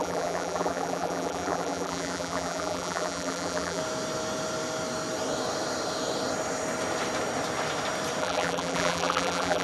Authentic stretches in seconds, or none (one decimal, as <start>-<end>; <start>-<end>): 3.8-8.2